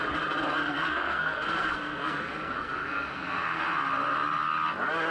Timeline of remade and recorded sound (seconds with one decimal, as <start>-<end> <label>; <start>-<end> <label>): 0.0-0.6 recorded; 0.6-3.6 remade; 3.6-5.1 recorded